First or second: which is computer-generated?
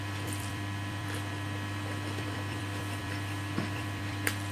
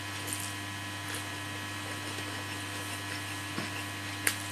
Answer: first